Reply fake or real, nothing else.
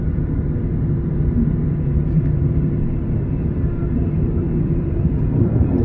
fake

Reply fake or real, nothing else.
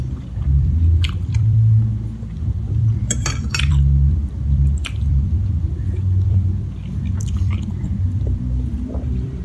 fake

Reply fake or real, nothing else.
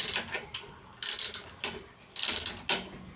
real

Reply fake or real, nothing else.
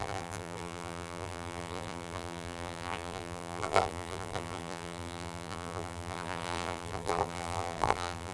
fake